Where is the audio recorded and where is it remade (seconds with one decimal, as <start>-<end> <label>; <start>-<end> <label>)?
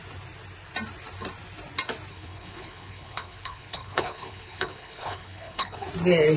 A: 0.0-2.1 recorded; 2.1-5.9 remade; 5.9-6.4 recorded